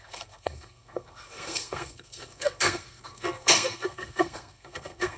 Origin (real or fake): fake